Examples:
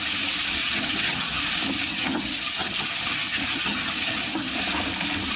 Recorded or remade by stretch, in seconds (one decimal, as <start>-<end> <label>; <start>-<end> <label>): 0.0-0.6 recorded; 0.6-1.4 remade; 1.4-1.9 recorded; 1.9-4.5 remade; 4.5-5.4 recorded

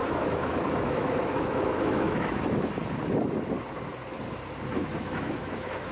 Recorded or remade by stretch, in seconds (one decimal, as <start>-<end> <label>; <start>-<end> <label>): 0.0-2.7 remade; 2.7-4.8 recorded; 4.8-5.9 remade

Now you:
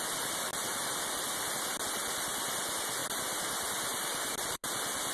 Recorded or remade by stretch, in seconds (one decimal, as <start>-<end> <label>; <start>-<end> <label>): 0.0-5.1 recorded

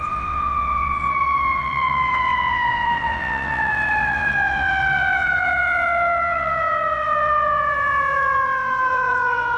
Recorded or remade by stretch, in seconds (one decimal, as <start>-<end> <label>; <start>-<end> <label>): 0.0-9.6 remade